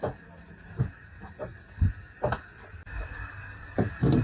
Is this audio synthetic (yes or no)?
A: no